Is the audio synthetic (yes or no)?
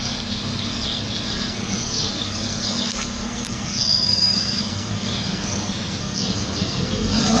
yes